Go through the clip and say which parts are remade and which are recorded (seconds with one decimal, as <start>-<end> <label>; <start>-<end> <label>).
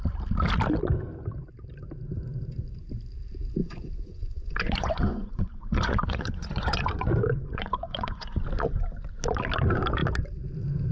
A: 0.0-3.6 recorded; 3.6-8.4 remade; 8.4-10.9 recorded